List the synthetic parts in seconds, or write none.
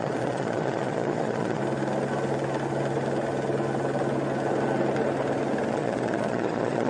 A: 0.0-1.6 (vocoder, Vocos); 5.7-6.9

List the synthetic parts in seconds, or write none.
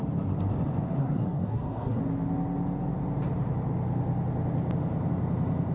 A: 1.0-2.0 (codec, SNAC)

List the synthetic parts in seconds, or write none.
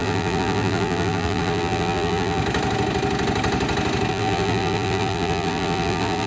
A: 0.0-2.4 (vocoder, BigVGAN v2); 4.1-6.3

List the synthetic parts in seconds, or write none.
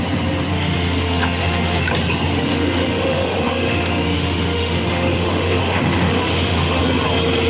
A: 0.5-1.9 (autoencoder, DAC-VAE); 2.3-6.8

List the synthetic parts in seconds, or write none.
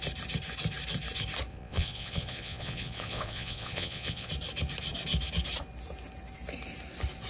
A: 1.5-4.3 (vocoder, Vocos)